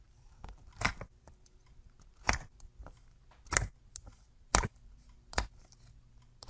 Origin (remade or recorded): remade